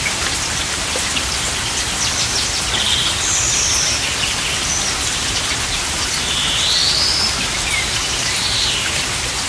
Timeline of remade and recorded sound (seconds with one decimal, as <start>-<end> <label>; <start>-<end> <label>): 0.0-6.8 recorded; 6.8-7.3 remade; 7.3-9.5 recorded